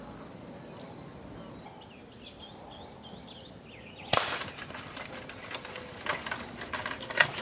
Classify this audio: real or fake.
real